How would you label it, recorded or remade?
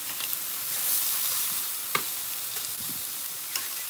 remade